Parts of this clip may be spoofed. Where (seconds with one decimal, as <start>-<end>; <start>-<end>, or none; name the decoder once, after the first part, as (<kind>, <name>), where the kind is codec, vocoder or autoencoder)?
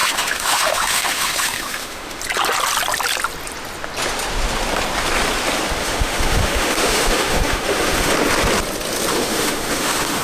0.0-2.2 (autoencoder, DAC-VAE); 5.8-8.1; 9.1-10.2